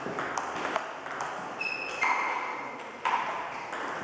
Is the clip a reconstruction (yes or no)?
no